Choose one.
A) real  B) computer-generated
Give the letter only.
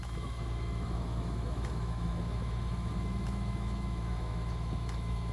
B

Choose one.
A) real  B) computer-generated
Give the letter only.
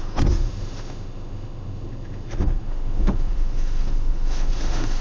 B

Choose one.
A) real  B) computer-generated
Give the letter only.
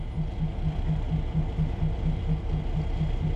A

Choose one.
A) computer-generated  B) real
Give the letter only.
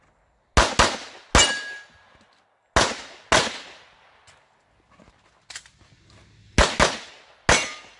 B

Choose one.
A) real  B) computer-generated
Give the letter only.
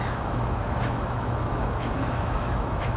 B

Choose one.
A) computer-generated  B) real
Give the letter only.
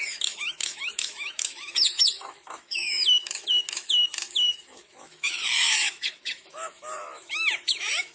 A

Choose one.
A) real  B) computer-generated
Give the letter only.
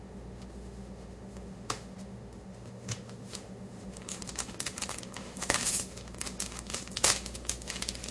B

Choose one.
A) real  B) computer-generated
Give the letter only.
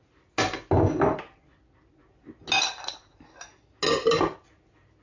A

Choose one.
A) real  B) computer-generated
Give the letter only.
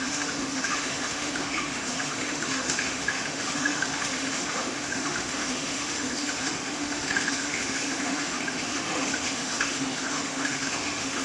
B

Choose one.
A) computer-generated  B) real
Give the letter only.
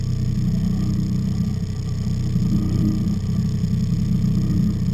B